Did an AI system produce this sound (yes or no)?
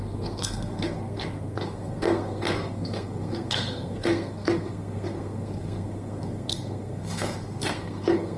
yes